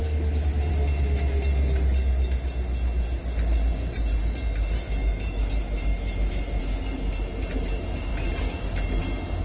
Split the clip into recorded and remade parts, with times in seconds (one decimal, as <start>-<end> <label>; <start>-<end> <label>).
0.0-0.7 remade; 0.7-5.0 recorded; 5.0-6.6 remade; 6.6-9.4 recorded